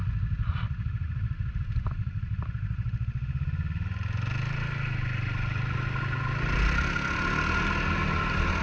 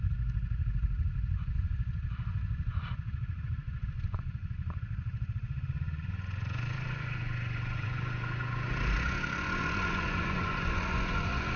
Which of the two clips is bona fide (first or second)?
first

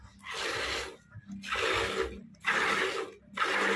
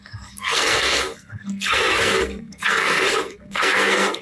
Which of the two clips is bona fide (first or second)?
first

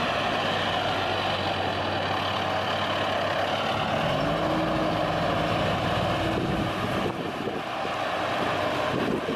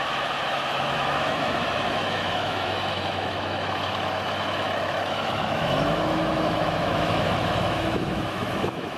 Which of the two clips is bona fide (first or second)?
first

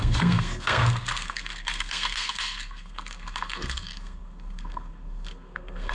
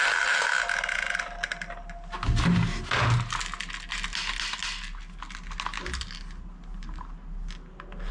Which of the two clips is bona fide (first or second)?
second